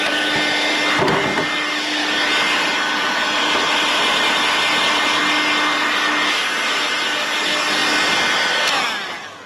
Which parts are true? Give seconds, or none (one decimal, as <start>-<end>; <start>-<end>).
0.0-9.5